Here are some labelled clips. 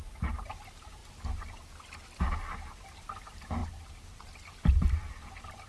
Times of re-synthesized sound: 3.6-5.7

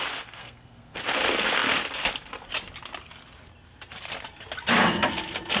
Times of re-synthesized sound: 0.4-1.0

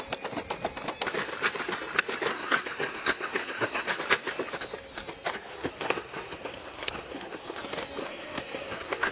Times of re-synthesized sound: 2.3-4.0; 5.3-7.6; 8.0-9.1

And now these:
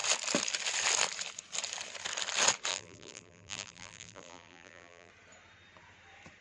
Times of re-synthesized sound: 2.7-5.1

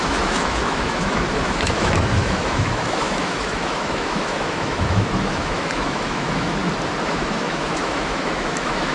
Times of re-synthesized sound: 0.0-6.6; 7.1-8.9

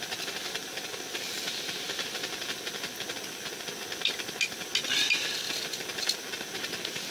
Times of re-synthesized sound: none